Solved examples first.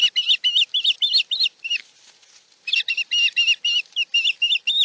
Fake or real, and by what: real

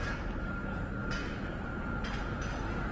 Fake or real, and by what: real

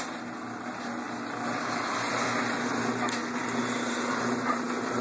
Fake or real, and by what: real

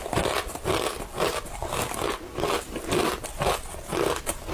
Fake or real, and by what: real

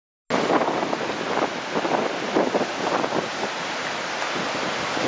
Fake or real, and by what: real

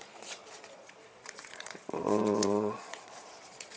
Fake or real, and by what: fake, vocoder, Vocos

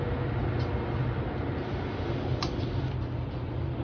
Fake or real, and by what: real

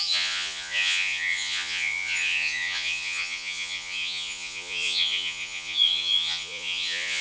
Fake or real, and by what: fake, vocoder, Vocos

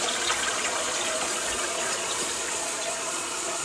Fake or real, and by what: fake, vocoder, Vocos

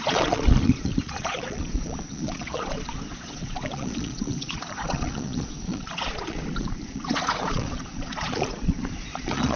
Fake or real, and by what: fake, vocoder, Vocos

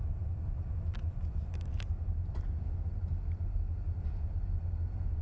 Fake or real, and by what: real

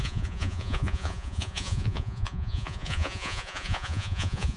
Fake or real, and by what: fake, vocoder, Vocos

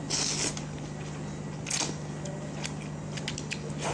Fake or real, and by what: real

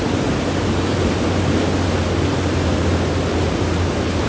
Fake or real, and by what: real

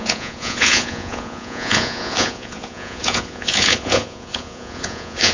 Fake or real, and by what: fake, vocoder, Vocos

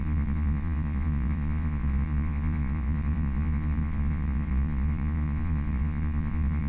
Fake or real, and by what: fake, vocoder, Vocos